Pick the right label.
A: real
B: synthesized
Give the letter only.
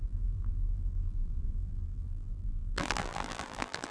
B